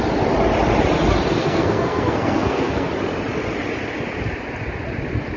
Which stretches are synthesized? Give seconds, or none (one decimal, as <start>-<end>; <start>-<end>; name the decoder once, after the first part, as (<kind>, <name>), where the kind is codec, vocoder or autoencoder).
1.4-2.9 (codec, SNAC)